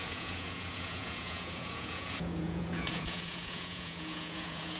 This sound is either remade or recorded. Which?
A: remade